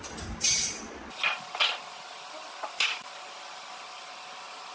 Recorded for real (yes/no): yes